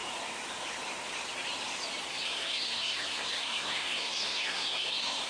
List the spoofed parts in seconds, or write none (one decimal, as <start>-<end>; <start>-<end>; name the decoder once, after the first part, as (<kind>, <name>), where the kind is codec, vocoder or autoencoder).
2.1-5.3 (codec, SNAC)